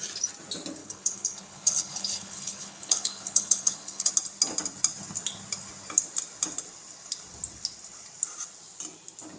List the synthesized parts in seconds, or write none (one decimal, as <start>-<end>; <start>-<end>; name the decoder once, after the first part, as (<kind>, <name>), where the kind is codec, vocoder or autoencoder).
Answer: 0.8-4.1 (codec, HILCodec)